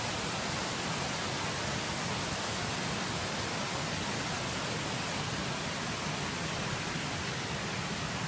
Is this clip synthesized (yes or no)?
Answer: no